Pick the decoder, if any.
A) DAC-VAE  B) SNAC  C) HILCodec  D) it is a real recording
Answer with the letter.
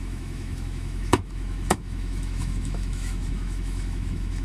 A